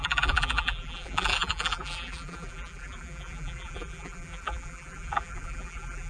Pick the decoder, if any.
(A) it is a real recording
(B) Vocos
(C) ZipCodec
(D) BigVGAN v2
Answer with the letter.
D